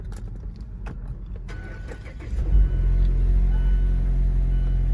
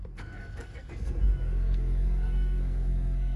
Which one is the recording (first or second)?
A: first